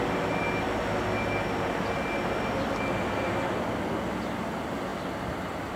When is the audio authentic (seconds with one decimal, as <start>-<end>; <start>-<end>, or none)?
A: 0.0-5.8